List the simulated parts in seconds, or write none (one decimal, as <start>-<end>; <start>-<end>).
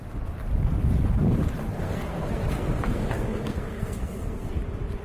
1.6-4.6